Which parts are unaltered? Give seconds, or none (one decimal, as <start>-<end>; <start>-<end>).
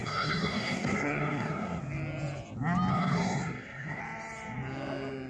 1.8-2.9; 4.0-5.3